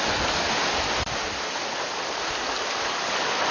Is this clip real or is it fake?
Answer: real